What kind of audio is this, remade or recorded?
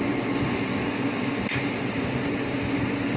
recorded